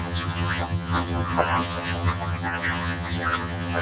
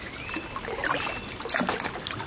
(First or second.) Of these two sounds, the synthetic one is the first